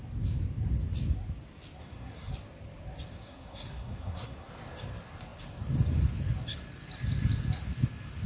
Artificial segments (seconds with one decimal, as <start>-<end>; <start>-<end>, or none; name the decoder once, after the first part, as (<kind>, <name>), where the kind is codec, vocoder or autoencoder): 1.8-2.3 (codec, SNAC); 3.1-4.5